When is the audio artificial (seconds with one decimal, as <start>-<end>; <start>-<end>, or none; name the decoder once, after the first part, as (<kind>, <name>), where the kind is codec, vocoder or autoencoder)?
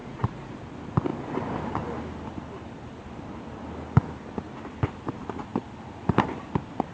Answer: 0.0-0.6 (vocoder, Vocos)